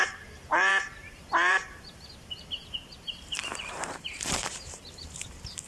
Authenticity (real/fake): fake